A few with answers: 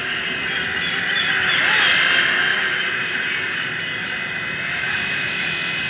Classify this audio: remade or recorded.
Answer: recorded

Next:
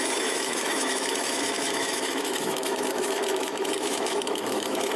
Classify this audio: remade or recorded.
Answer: remade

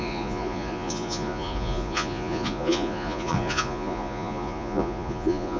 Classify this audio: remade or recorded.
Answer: remade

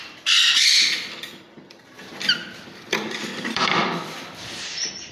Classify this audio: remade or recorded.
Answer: remade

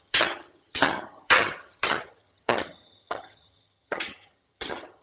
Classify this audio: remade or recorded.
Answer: remade